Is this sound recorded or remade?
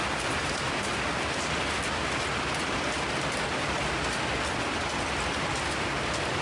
recorded